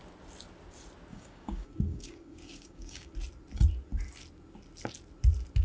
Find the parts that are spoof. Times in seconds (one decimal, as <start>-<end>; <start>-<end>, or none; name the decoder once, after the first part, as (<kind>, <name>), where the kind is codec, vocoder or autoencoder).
1.1-3.1 (codec, DAC)

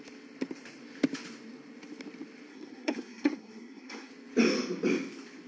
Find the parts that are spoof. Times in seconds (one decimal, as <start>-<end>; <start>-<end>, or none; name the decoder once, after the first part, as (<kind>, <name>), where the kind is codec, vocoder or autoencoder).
2.5-4.1 (codec, SNAC)

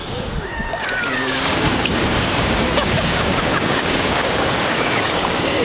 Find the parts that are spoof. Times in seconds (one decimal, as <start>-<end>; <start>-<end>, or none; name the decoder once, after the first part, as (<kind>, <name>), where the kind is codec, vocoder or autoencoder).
0.0-5.6 (codec, DAC)

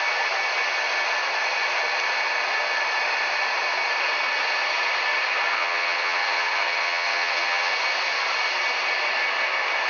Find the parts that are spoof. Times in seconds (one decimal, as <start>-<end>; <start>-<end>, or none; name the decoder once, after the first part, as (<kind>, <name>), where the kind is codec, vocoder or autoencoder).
5.5-7.7 (vocoder, HiFi-GAN)

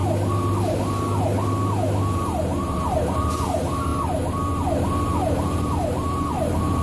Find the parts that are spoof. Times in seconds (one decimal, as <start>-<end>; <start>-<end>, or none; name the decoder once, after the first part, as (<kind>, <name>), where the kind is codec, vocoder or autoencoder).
2.1-3.9 (vocoder, BigVGAN v2); 5.0-6.8

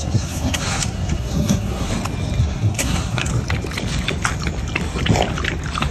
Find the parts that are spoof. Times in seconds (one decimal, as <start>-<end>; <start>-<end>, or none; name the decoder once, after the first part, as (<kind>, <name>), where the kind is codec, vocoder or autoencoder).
0.0-1.9 (codec, SNAC); 2.4-3.3

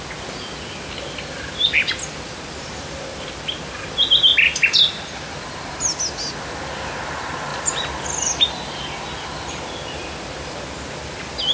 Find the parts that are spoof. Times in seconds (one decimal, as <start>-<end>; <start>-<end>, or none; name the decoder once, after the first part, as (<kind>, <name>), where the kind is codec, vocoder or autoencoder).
none